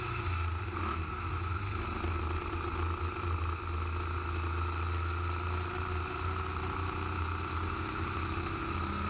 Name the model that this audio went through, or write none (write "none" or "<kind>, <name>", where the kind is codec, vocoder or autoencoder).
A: none